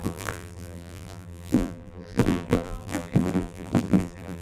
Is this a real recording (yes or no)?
no